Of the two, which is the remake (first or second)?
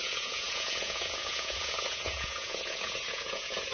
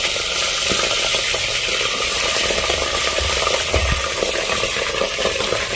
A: first